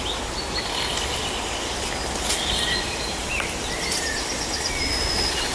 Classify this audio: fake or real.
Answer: real